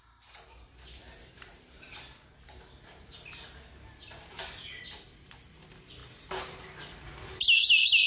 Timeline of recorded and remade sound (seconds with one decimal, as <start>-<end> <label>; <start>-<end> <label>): 0.0-8.1 recorded